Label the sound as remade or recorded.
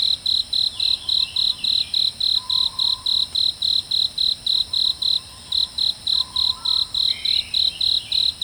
remade